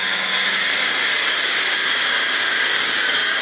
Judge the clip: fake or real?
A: fake